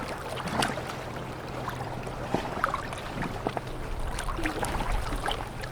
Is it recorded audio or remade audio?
recorded